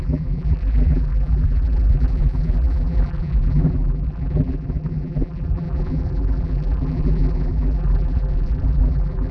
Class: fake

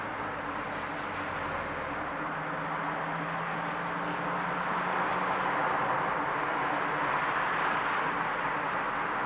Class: real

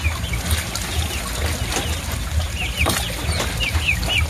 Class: real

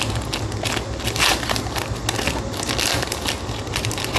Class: real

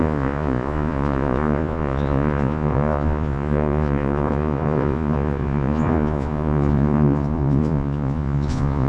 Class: fake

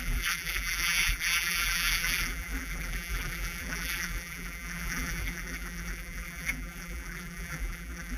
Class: fake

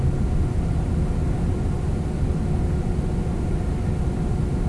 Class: real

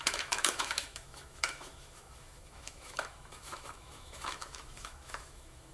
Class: fake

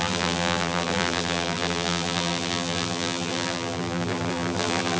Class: fake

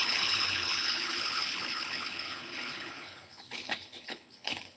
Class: fake